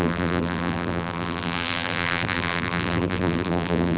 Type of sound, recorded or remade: remade